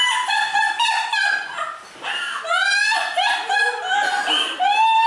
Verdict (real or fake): real